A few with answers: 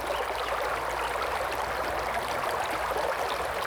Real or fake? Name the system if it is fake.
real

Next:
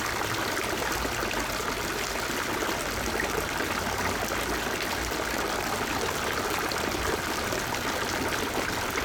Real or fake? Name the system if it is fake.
real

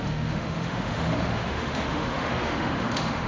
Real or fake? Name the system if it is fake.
fake, autoencoder, DAC-VAE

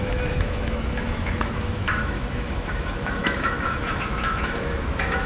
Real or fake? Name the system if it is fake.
fake, autoencoder, DAC-VAE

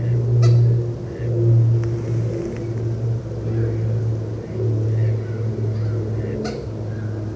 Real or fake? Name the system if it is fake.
real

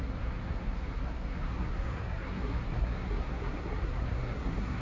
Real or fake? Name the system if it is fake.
fake, codec, SNAC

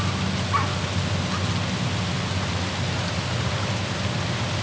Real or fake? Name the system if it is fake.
real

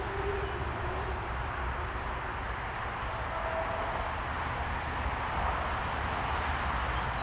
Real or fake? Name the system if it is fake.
real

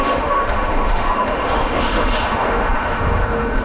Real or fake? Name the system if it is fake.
fake, autoencoder, DAC-VAE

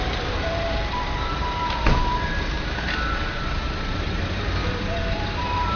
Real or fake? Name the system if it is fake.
fake, vocoder, BigVGAN v2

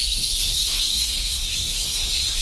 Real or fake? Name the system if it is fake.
fake, codec, SNAC